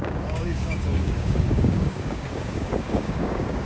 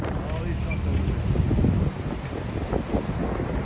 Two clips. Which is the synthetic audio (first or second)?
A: first